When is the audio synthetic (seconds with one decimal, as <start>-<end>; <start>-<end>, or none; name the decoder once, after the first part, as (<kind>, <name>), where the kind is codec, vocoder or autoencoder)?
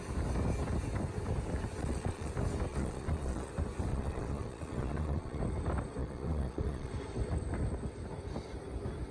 1.8-2.3 (vocoder, Vocos); 2.7-3.5; 3.9-5.4; 6.0-6.9